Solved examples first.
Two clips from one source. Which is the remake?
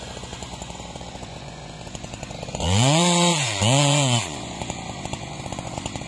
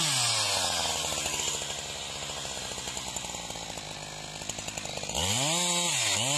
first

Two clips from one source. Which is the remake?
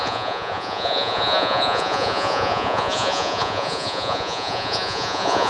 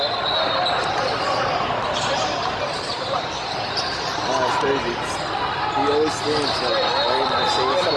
first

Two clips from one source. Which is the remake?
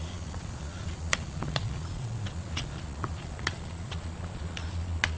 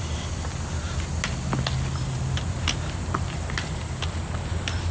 first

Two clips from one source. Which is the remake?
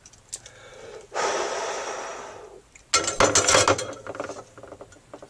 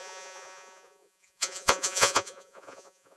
second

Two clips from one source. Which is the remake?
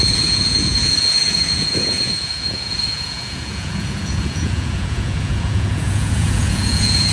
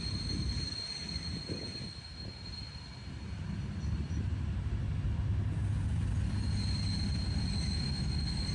first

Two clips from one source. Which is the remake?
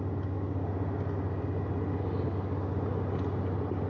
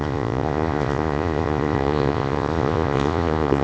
second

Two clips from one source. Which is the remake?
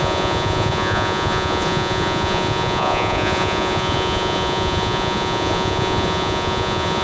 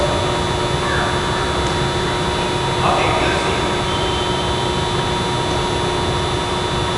first